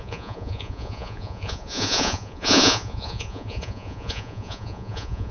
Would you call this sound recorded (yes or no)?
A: no